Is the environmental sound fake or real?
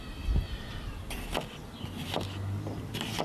real